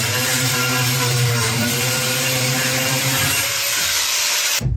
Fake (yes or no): yes